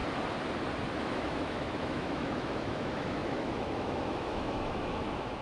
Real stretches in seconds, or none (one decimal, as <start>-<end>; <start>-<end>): 0.0-1.0